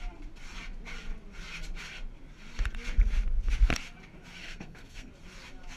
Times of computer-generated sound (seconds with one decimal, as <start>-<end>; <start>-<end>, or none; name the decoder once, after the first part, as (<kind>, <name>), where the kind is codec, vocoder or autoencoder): 4.4-5.1 (codec, SNAC)